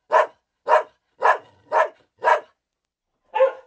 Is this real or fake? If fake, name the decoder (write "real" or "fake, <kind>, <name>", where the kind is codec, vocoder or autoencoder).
real